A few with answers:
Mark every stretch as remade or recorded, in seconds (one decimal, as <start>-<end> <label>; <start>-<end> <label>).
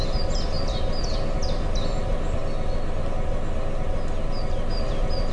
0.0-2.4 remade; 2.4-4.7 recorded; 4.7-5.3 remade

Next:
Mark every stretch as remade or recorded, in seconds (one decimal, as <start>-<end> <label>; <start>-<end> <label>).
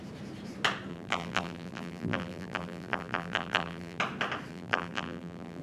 0.0-0.9 recorded; 0.9-4.0 remade; 4.0-4.5 recorded; 4.5-5.6 remade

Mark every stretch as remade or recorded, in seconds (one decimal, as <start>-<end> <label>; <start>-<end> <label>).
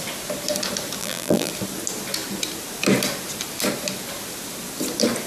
0.0-1.0 recorded; 1.0-1.5 remade; 1.5-5.3 recorded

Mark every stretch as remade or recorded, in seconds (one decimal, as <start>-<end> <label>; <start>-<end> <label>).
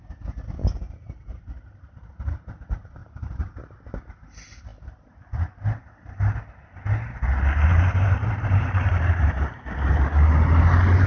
0.0-0.6 recorded; 0.6-2.5 remade; 2.5-3.0 recorded; 3.0-3.6 remade; 3.6-7.7 recorded; 7.7-10.0 remade; 10.0-11.1 recorded